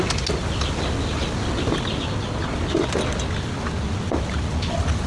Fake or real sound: real